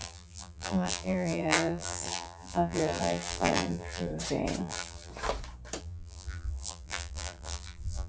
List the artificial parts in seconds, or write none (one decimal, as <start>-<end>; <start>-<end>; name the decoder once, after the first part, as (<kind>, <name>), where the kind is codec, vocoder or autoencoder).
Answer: 0.0-4.1 (vocoder, BigVGAN v2); 4.6-5.1; 5.8-8.1